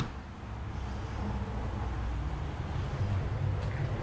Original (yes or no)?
yes